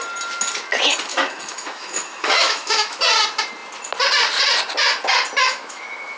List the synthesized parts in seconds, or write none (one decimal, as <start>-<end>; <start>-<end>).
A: 1.1-3.0; 5.4-6.2